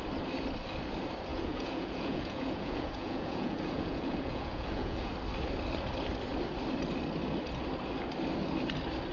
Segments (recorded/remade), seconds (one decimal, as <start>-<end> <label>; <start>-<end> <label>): 0.0-1.3 recorded; 1.3-5.1 remade; 5.1-9.1 recorded

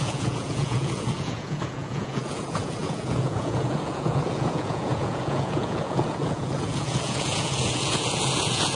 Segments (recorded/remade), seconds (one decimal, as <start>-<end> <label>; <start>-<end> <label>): 0.0-8.7 remade

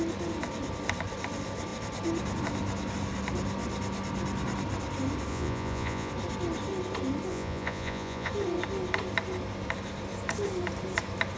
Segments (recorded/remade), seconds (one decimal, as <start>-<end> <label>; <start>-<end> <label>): 0.0-5.3 recorded; 5.3-6.1 remade; 6.1-7.3 recorded; 7.3-8.3 remade; 8.3-11.4 recorded

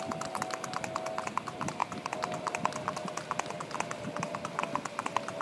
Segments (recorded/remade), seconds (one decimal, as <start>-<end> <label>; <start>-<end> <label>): 0.0-5.4 recorded

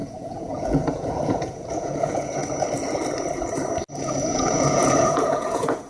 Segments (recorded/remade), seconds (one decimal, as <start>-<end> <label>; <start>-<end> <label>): 0.0-2.4 remade; 2.4-3.9 recorded; 3.9-5.9 remade